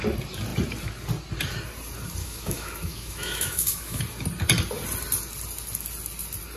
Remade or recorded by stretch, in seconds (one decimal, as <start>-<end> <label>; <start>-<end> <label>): 0.0-2.2 recorded; 2.2-4.0 remade; 4.0-6.6 recorded

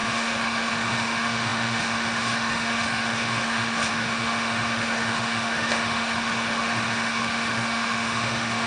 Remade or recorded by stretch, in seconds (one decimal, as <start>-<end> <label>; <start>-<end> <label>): 0.0-8.7 remade

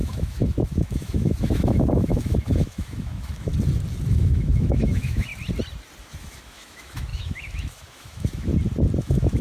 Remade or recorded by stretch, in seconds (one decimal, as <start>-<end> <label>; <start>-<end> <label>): 0.0-3.5 remade; 3.5-4.1 recorded; 4.1-5.3 remade; 5.3-6.0 recorded; 6.0-8.5 remade; 8.5-9.0 recorded; 9.0-9.4 remade

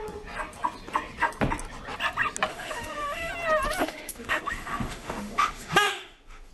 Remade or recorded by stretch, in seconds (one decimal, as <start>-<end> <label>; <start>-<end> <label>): 0.0-2.5 recorded; 2.5-3.3 remade; 3.3-3.8 recorded; 3.8-6.5 remade

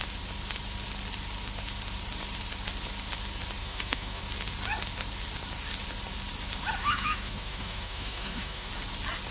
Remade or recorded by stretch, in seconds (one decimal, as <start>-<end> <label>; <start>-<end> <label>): 0.0-3.6 recorded; 3.6-4.2 remade; 4.2-6.8 recorded; 6.8-8.7 remade; 8.7-9.3 recorded

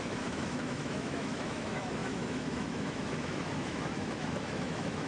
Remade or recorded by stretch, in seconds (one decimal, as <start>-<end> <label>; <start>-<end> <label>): 0.0-5.1 remade